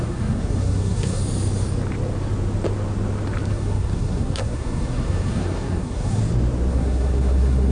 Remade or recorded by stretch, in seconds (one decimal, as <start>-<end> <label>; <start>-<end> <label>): 0.0-1.2 remade; 1.2-3.5 recorded; 3.5-6.2 remade; 6.2-6.7 recorded; 6.7-7.7 remade